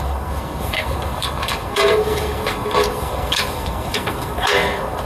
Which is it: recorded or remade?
remade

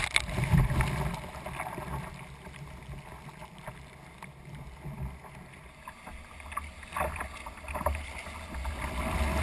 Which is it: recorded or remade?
recorded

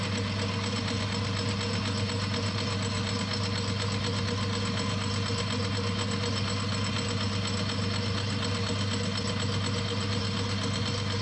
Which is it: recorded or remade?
recorded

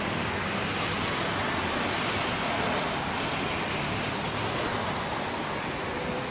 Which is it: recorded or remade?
recorded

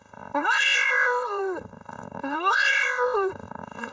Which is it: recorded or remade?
remade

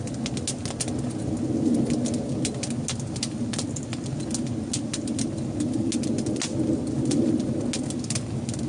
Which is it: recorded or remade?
recorded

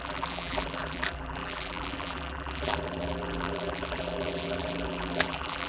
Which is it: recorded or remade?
remade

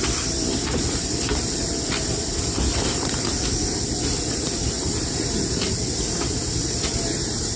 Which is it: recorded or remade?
recorded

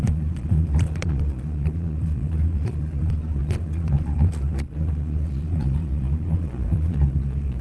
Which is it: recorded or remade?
remade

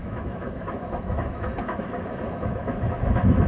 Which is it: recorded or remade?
remade